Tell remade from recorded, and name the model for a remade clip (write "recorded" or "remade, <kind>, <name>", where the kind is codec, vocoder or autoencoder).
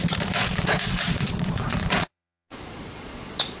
remade, vocoder, Vocos